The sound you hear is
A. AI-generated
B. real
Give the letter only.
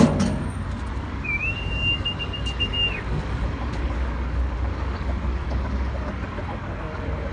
A